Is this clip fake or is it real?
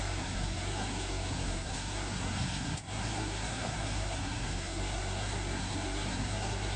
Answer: fake